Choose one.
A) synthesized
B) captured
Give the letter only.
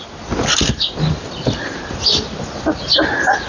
B